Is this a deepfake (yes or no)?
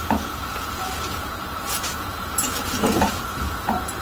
yes